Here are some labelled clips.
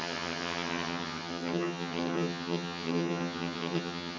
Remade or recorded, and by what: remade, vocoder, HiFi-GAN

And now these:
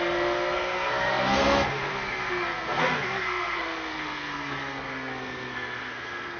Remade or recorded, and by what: remade, codec, SNAC